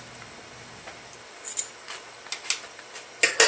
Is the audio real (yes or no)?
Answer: yes